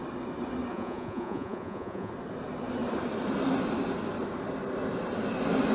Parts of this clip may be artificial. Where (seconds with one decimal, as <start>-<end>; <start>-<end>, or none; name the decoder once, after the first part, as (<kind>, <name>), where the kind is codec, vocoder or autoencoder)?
0.7-2.1 (vocoder, Vocos)